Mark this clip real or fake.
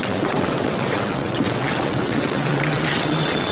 fake